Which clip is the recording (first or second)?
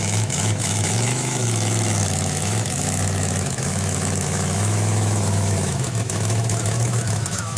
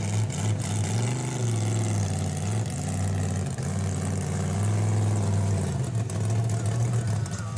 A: second